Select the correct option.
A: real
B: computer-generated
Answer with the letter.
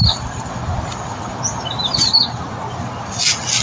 A